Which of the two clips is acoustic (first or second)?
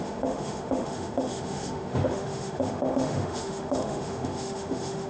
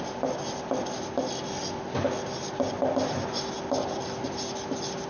second